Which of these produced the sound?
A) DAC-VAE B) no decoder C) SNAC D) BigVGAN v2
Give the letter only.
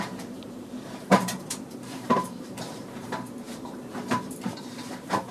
D